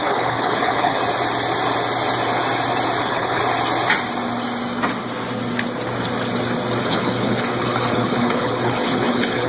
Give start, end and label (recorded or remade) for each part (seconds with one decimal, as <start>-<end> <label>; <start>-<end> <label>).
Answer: 0.0-1.0 remade; 1.0-3.0 recorded; 3.0-3.4 remade; 3.4-6.8 recorded; 6.8-9.5 remade